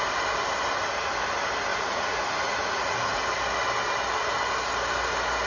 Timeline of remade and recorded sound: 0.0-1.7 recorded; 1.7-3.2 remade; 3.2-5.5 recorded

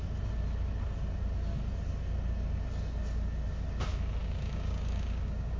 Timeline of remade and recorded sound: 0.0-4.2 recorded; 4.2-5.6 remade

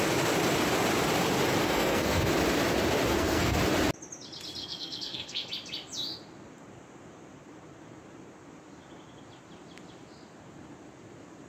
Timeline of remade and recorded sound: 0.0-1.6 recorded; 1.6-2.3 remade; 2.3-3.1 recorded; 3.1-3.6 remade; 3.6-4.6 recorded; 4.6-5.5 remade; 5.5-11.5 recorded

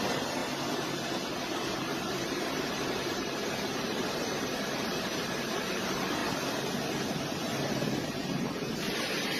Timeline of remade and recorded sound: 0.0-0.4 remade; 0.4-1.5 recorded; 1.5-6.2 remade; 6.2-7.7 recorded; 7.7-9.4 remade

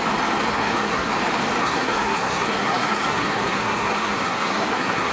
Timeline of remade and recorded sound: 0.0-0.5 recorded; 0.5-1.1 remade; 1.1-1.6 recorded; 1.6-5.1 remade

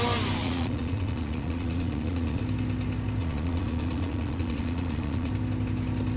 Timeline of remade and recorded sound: 0.0-0.4 recorded; 0.4-2.4 remade; 2.4-3.2 recorded; 3.2-5.3 remade; 5.3-6.2 recorded

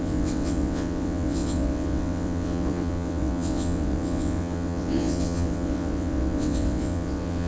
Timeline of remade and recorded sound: 0.0-7.5 remade

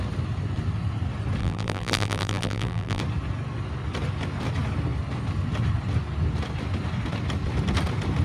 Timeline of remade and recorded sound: 0.0-1.4 recorded; 1.4-3.0 remade; 3.0-8.2 recorded